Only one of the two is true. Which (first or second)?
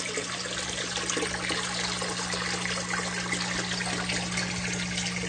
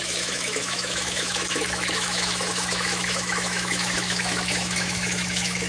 first